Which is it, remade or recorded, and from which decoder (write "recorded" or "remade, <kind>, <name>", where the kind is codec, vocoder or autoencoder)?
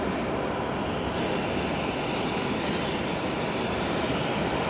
recorded